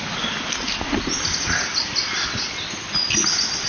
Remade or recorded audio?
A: recorded